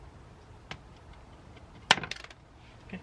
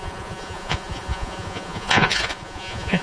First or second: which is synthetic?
second